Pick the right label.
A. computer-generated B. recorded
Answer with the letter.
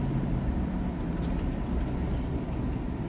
B